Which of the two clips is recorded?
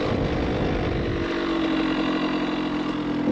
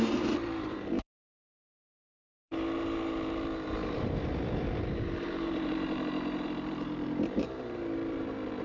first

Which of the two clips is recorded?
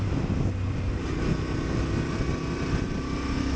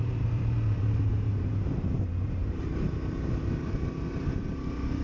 first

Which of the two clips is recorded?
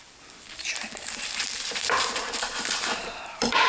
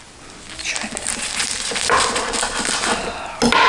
second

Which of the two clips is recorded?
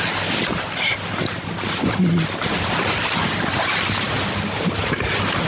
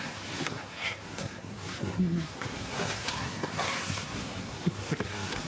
first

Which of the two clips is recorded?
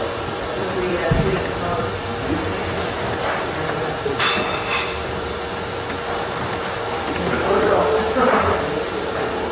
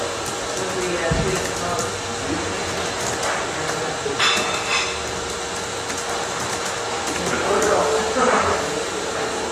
second